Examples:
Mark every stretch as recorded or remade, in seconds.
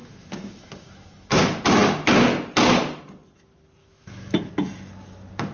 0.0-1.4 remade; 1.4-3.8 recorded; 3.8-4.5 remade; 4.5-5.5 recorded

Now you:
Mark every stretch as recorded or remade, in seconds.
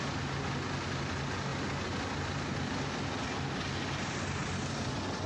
0.0-5.3 recorded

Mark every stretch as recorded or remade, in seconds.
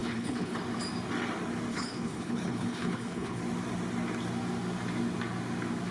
0.0-0.6 remade; 0.6-1.7 recorded; 1.7-3.4 remade; 3.4-5.9 recorded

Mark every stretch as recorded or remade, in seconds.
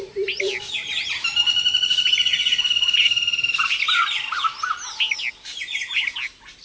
0.0-6.6 recorded